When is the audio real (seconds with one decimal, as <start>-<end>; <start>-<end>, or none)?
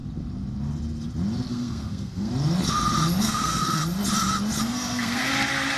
0.0-1.5; 2.3-3.2; 3.8-4.6; 5.3-5.8